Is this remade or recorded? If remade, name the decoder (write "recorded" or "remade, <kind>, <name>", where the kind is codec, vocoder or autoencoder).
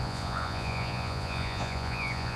remade, vocoder, Vocos